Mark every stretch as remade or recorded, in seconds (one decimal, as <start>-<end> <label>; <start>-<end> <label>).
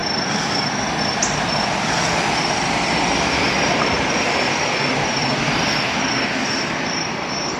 0.0-1.0 recorded; 1.0-5.2 remade; 5.2-6.6 recorded; 6.6-7.6 remade